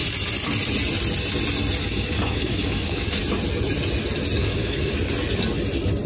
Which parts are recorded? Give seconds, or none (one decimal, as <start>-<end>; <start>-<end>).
0.0-1.8; 3.2-4.4; 4.9-6.1